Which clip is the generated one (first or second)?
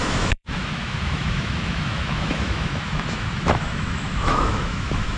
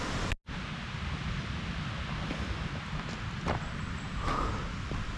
first